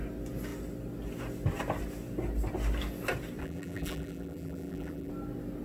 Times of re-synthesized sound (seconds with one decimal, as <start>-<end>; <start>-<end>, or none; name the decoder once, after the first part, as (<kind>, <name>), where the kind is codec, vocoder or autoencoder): 3.4-5.1 (vocoder, BigVGAN v2)

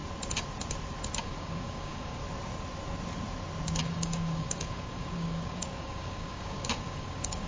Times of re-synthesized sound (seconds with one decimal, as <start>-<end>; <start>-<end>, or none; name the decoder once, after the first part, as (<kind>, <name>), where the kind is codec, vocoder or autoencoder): 1.2-2.2 (codec, DAC); 3.8-7.5

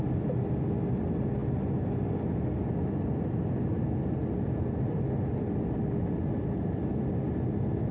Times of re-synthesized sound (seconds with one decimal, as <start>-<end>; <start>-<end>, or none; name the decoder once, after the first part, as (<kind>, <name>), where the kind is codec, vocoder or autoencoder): none